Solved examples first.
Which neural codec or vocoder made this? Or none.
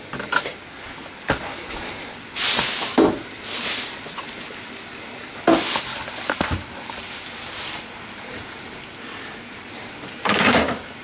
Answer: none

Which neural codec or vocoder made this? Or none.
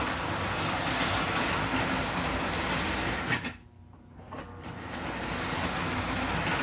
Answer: none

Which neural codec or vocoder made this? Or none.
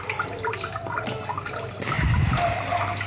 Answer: none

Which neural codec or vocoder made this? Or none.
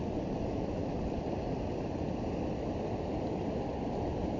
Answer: none